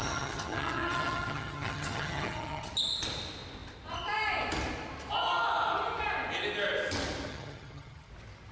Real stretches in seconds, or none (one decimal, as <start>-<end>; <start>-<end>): 2.7-7.3; 8.1-8.5